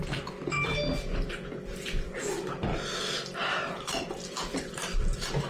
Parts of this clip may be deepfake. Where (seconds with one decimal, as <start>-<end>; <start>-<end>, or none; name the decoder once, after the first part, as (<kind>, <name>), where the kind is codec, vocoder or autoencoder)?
0.0-2.7 (vocoder, BigVGAN v2); 3.7-5.5